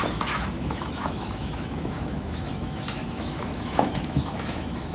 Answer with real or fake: fake